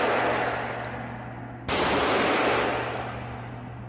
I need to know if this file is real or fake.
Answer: real